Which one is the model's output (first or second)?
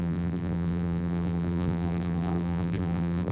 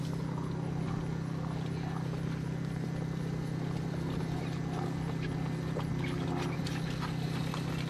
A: first